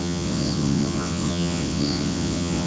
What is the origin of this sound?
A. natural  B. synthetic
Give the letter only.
B